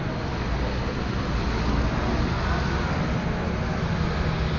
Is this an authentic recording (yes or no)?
yes